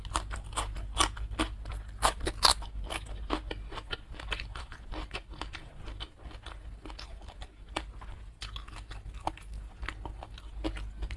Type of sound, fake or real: real